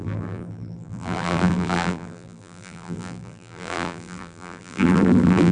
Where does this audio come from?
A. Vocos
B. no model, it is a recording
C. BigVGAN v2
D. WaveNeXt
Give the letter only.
C